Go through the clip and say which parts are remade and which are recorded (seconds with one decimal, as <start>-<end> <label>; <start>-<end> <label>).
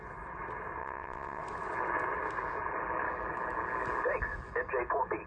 0.0-0.8 recorded; 0.8-1.4 remade; 1.4-5.3 recorded